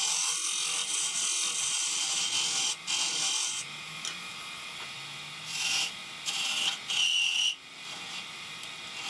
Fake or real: real